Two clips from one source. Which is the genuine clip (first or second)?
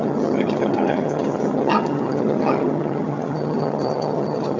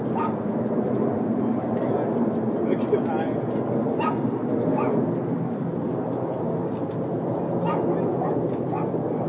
second